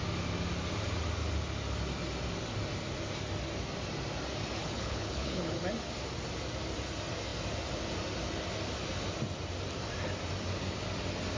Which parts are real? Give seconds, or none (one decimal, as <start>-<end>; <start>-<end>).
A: 0.0-4.6; 5.6-11.4